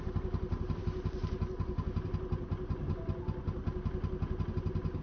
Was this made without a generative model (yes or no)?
yes